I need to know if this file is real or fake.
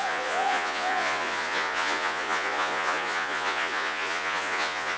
fake